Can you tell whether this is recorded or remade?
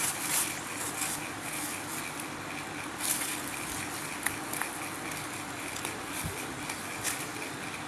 recorded